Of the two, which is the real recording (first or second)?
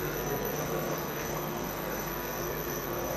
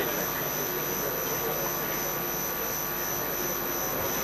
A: second